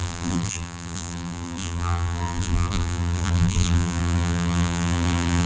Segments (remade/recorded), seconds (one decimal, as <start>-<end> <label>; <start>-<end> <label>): 0.0-5.5 remade